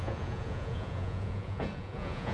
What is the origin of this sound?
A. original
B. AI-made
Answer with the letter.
B